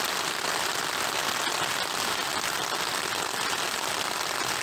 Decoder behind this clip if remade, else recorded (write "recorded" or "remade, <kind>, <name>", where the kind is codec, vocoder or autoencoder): recorded